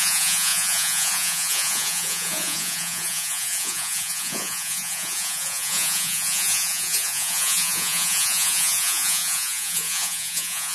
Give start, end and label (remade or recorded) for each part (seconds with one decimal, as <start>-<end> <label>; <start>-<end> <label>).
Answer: 0.0-10.7 remade